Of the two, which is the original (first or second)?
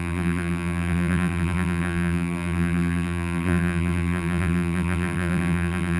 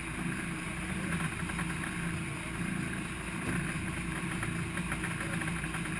second